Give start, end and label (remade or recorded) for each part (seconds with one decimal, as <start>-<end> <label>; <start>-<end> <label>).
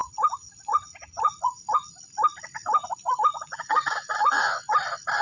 0.0-1.6 remade; 1.6-3.3 recorded; 3.3-4.5 remade; 4.5-5.2 recorded